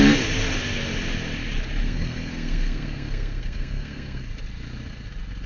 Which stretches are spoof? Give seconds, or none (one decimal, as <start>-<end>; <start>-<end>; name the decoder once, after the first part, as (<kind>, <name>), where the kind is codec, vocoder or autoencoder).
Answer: 1.8-4.3 (codec, SNAC)